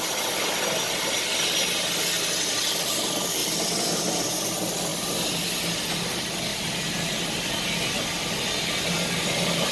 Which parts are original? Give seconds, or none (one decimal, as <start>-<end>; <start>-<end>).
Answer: 0.0-3.4; 4.3-6.5; 7.2-9.7